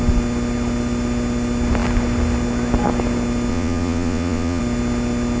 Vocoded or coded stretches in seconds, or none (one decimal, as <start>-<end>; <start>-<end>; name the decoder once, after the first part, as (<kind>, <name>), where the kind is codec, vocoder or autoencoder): 3.5-4.6 (vocoder, Vocos)